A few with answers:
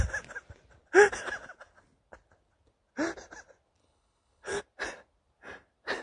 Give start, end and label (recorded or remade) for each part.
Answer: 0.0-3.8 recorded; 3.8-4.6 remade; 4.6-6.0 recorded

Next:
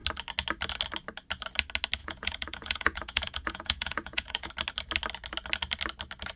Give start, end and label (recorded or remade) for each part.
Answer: 0.0-2.0 recorded; 2.0-4.5 remade; 4.5-6.4 recorded

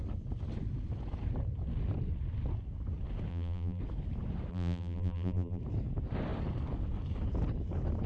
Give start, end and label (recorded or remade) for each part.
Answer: 0.0-3.3 recorded; 3.3-3.8 remade; 3.8-4.5 recorded; 4.5-5.6 remade; 5.6-8.1 recorded

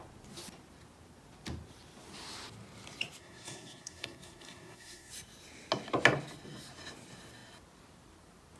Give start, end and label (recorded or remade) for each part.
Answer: 0.0-3.2 recorded; 3.2-5.1 remade; 5.1-8.6 recorded